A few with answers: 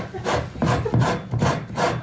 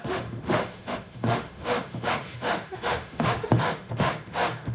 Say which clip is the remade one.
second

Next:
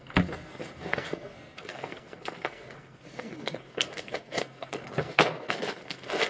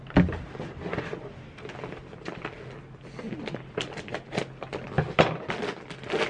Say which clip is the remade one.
first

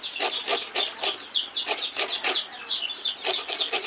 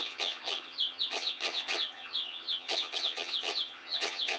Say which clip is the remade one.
second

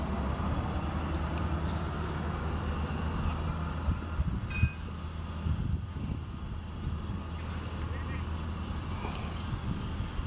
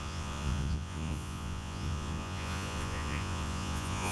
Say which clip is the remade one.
second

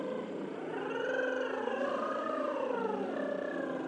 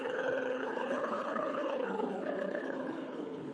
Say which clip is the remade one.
second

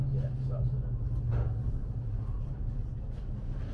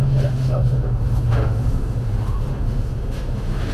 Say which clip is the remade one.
second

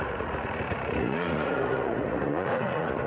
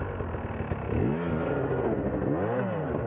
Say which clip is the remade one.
first